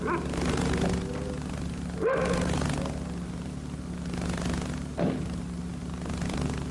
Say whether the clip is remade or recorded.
recorded